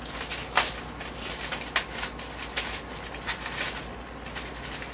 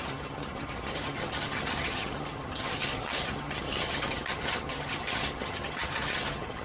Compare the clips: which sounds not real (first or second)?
second